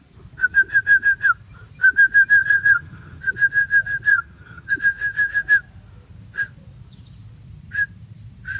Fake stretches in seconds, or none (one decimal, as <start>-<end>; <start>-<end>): 2.4-3.2; 4.1-4.7